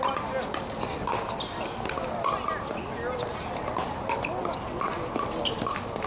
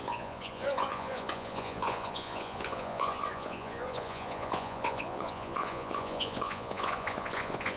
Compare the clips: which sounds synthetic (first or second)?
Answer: second